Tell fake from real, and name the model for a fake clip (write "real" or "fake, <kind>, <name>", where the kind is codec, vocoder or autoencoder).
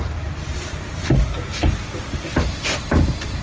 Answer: real